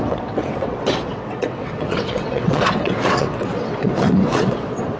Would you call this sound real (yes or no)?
no